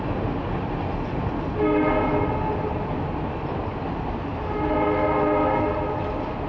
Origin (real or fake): real